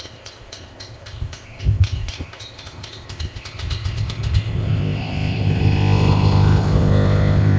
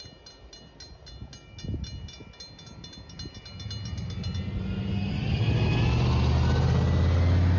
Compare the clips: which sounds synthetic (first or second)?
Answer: first